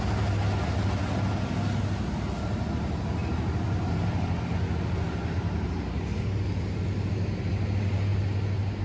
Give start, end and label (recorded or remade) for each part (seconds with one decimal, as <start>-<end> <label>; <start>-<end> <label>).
0.0-8.8 recorded